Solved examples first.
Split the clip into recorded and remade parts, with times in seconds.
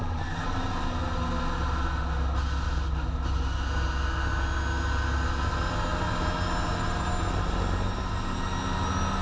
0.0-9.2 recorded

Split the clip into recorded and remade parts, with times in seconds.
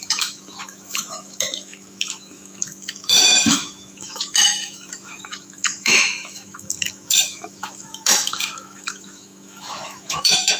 0.0-10.6 remade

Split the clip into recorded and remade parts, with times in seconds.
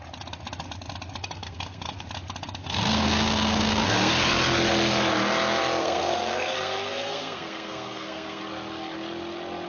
0.0-1.2 recorded; 1.2-2.0 remade; 2.0-2.6 recorded; 2.6-4.1 remade; 4.1-5.8 recorded; 5.8-8.4 remade; 8.4-9.7 recorded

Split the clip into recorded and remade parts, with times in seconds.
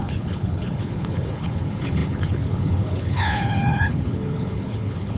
0.0-5.2 remade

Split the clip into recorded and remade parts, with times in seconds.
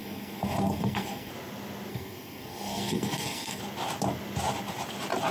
0.0-1.3 remade; 1.3-1.9 recorded; 1.9-3.6 remade; 3.6-5.3 recorded